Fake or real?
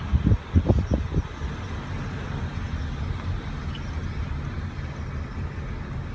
real